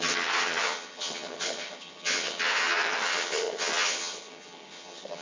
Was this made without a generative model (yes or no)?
no